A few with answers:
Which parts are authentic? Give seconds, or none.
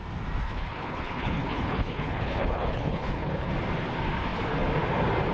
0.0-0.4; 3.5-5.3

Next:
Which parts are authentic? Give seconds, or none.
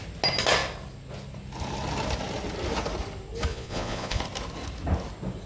0.0-3.5; 4.2-5.5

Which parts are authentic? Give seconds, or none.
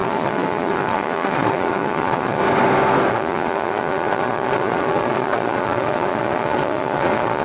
2.4-3.1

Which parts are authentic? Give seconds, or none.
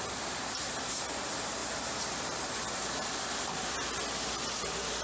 0.0-5.0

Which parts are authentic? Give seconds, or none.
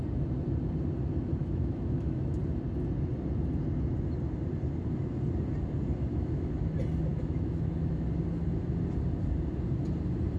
0.0-1.4; 2.4-6.1; 6.6-7.1; 8.0-10.4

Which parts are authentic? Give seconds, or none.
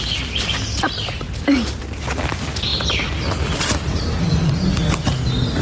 0.0-5.6